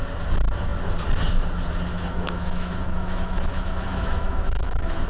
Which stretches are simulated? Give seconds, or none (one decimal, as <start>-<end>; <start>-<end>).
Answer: 1.9-5.1